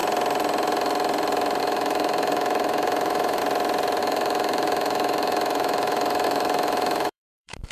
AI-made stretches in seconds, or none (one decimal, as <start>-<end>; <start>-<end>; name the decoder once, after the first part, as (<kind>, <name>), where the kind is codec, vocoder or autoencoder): 1.6-3.4 (autoencoder, DAC-VAE); 4.0-7.7